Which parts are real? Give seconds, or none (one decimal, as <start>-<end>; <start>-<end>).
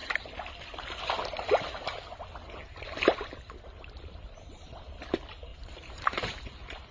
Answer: 0.5-5.5; 6.4-6.9